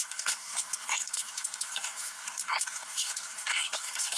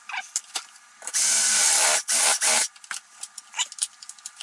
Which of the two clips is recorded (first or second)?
second